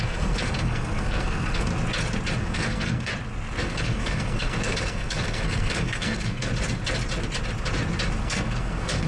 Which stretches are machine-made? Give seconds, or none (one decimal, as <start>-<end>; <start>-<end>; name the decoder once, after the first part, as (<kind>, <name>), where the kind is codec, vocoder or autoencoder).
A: 0.0-1.7 (codec, SNAC); 2.4-3.1; 3.6-6.5; 8.2-9.1